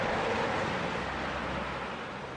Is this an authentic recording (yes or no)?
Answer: yes